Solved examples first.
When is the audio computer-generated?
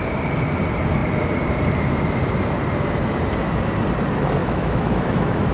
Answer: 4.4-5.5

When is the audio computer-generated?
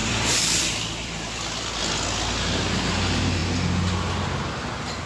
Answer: 0.0-1.8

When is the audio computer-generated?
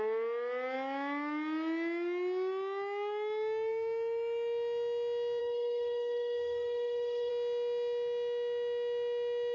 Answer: 5.4-7.3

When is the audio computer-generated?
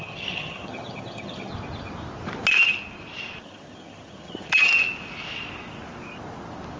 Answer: 0.0-1.5; 3.4-4.7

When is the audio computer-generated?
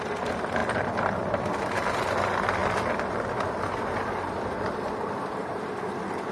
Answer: none